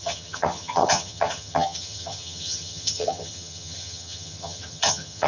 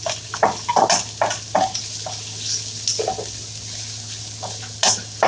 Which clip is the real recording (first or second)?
second